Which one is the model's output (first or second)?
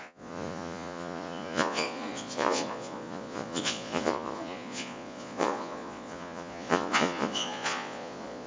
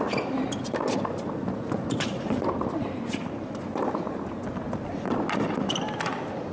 first